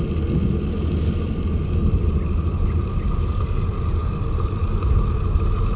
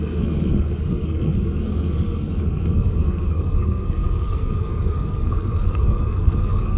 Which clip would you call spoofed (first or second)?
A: second